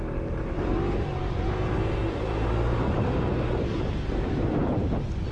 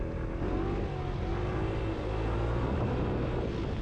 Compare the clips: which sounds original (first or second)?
second